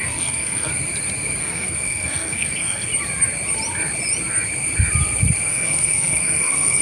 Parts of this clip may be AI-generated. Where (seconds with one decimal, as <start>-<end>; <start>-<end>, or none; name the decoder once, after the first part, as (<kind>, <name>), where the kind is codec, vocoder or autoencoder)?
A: 0.0-0.7 (codec, SNAC); 1.4-2.9; 5.5-6.8